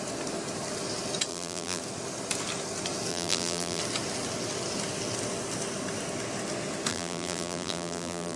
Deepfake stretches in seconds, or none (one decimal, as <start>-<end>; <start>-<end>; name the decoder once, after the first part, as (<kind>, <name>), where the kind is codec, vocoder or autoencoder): 1.3-1.8 (vocoder, BigVGAN v2); 3.1-3.8; 6.9-8.4